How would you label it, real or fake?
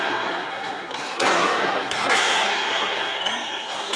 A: fake